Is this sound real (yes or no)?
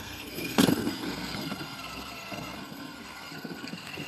no